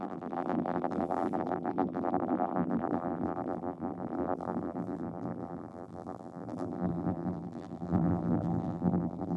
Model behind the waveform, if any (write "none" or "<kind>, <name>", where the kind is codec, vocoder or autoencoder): vocoder, BigVGAN v2